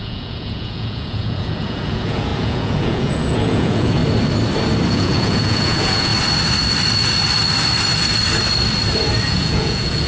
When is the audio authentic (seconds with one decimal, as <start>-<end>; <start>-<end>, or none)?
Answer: 4.0-4.9; 6.1-9.2